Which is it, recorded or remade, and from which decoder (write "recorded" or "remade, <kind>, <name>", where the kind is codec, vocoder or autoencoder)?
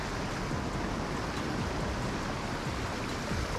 recorded